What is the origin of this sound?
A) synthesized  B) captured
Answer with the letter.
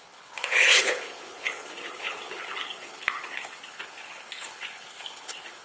A